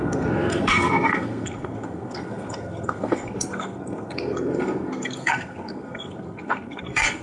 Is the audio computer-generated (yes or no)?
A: yes